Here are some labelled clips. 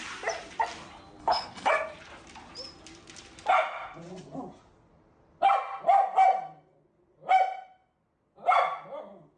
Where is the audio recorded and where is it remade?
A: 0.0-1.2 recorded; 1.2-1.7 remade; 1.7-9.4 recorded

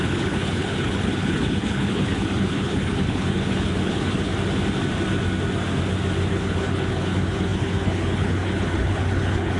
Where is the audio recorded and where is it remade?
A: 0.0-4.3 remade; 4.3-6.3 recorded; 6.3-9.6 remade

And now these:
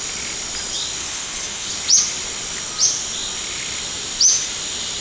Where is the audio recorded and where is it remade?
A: 0.0-1.0 recorded; 1.0-1.7 remade; 1.7-5.0 recorded

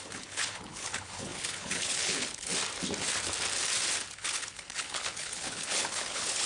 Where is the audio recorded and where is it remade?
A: 0.0-2.5 remade; 2.5-4.1 recorded; 4.1-6.5 remade

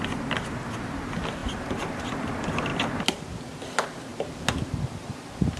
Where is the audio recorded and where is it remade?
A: 0.0-5.6 recorded